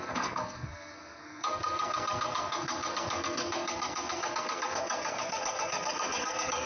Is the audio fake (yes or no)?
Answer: yes